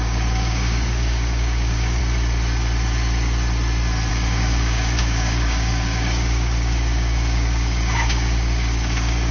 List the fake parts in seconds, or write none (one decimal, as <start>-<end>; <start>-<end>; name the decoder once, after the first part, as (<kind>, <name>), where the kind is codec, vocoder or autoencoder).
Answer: 0.0-2.0 (codec, DAC); 4.1-9.3